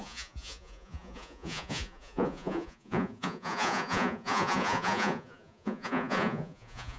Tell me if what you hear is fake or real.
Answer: fake